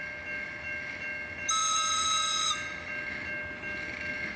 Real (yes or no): yes